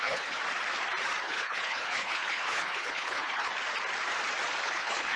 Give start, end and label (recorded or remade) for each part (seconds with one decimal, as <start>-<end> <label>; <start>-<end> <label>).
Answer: 0.0-0.4 remade; 0.4-1.2 recorded; 1.2-3.5 remade; 3.5-4.6 recorded; 4.6-5.2 remade